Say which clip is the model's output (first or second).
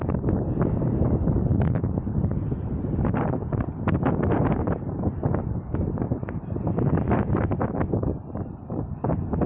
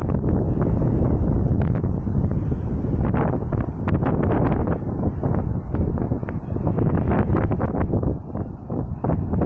first